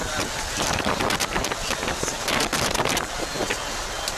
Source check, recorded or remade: remade